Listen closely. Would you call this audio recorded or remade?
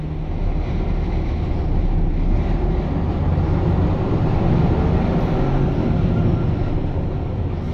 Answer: recorded